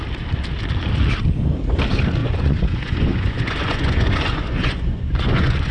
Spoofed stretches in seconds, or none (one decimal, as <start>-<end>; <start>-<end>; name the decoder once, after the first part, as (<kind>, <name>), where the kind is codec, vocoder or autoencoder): 2.2-5.7 (vocoder, Vocos)